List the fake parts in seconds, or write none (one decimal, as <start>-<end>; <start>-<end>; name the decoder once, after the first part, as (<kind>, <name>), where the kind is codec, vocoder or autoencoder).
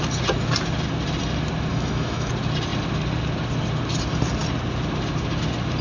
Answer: 1.7-2.3 (autoencoder, DAC-VAE)